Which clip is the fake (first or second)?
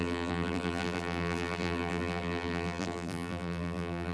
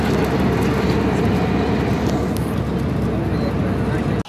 first